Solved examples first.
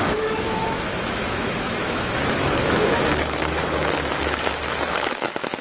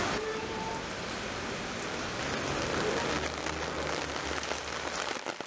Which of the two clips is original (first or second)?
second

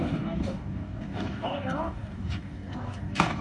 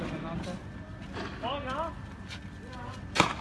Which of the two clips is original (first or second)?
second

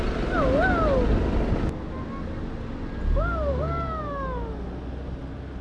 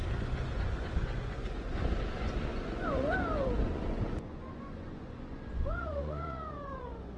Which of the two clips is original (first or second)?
first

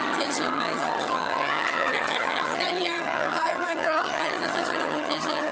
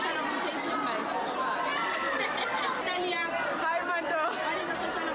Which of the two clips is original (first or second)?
second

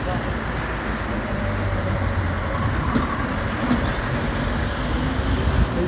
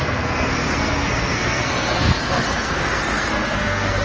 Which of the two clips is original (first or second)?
first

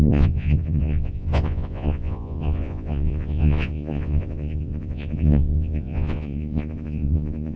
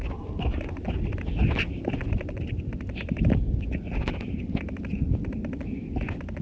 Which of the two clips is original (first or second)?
second